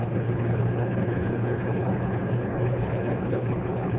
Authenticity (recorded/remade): remade